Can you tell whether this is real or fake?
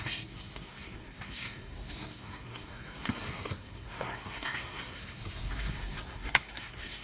fake